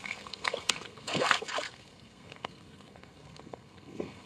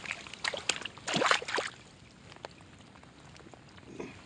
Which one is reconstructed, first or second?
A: first